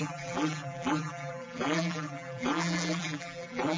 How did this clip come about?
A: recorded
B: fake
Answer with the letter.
B